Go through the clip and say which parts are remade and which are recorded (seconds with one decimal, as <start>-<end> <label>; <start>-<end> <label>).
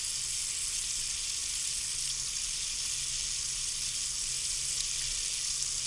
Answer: 0.0-5.9 recorded